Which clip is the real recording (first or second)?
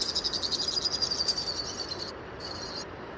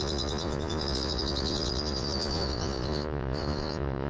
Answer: first